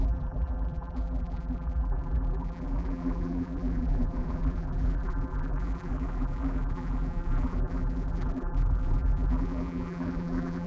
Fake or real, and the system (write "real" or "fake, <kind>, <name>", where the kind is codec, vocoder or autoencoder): fake, vocoder, BigVGAN v2